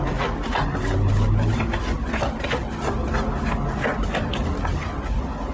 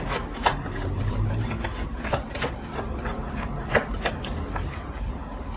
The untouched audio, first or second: first